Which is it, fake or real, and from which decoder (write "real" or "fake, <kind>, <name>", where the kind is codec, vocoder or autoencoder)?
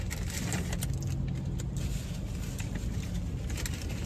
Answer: real